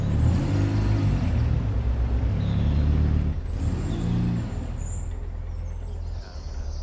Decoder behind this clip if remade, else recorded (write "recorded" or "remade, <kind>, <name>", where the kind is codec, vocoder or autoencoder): recorded